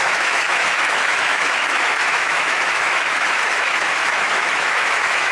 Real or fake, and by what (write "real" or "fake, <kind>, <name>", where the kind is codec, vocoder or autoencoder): fake, autoencoder, DAC-VAE